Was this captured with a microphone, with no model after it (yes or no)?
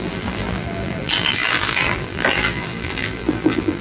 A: no